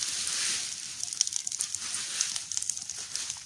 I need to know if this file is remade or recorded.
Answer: recorded